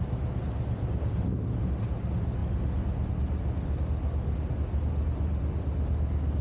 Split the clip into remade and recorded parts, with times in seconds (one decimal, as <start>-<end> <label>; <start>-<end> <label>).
0.0-6.4 recorded